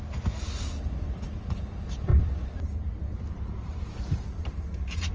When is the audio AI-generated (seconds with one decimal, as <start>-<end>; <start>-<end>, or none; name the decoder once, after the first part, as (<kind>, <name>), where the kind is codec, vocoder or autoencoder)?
none